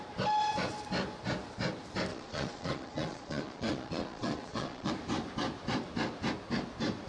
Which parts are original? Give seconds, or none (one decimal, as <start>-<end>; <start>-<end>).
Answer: 0.0-2.1; 4.9-7.1